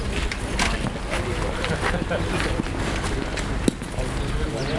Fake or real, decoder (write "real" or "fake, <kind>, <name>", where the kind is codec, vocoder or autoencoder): real